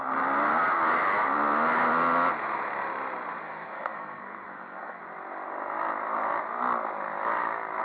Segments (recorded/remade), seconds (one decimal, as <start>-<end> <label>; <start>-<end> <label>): 0.0-3.4 recorded; 3.4-5.0 remade; 5.0-7.8 recorded